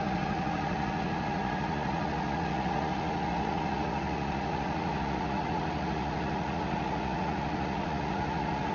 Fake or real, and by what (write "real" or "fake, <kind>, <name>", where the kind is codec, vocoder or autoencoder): fake, vocoder, Vocos